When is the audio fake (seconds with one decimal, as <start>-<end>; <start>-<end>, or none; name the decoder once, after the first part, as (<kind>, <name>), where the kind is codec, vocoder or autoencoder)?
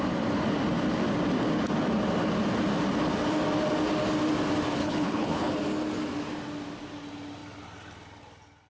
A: 4.8-5.5 (codec, HILCodec)